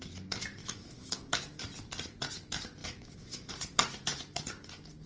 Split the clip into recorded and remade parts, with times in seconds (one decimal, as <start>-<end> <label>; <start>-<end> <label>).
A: 0.0-0.6 recorded; 0.6-1.4 remade; 1.4-2.8 recorded; 2.8-3.5 remade; 3.5-5.1 recorded